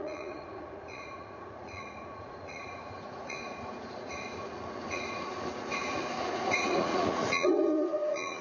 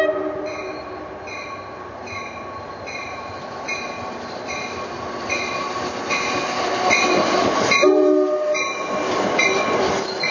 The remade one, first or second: first